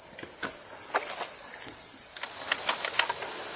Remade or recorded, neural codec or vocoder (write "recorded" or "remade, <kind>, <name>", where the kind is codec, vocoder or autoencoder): recorded